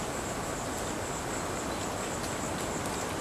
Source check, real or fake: real